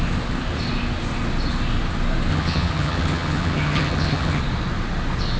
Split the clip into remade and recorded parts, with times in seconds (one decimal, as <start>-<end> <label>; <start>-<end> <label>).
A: 0.0-2.3 recorded; 2.3-4.4 remade; 4.4-5.4 recorded